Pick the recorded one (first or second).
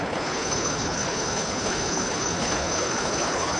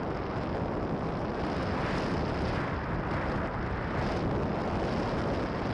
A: second